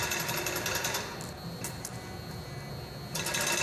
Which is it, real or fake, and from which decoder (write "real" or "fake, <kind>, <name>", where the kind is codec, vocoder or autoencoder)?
real